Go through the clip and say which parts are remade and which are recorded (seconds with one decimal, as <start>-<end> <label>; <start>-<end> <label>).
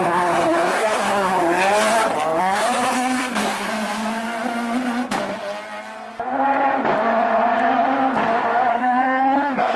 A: 0.0-1.4 remade; 1.4-2.4 recorded; 2.4-3.7 remade; 3.7-8.7 recorded; 8.7-9.8 remade